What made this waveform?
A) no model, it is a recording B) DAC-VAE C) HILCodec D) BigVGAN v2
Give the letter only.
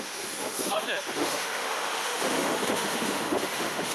B